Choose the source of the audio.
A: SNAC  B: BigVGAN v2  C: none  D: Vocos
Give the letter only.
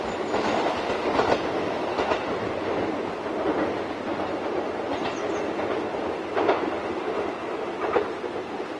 C